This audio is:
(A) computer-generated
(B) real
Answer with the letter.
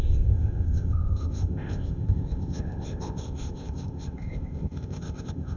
A